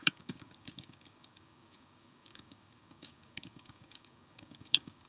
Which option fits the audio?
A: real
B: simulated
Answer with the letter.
B